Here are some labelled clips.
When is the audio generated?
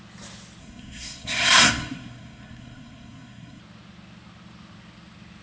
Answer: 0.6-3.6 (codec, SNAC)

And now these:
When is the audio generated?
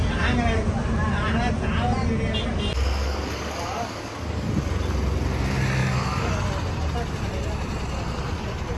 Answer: 3.0-4.5 (codec, DAC); 5.8-6.3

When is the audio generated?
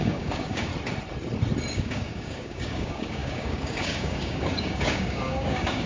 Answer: 0.0-0.7 (codec, DAC); 1.7-5.9